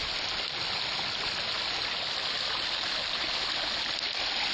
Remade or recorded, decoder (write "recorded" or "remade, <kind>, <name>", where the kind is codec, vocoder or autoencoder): recorded